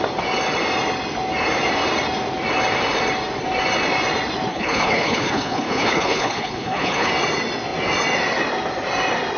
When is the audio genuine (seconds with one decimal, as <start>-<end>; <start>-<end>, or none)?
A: 0.0-4.5; 7.1-9.4